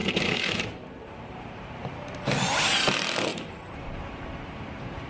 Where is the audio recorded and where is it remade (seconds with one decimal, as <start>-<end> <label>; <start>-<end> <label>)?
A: 0.0-1.9 remade; 1.9-3.3 recorded; 3.3-4.2 remade; 4.2-5.1 recorded